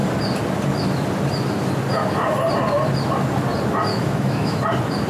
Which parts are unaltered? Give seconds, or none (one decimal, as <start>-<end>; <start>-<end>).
0.0-3.9; 4.6-5.1